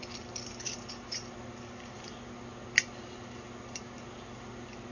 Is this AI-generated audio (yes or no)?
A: no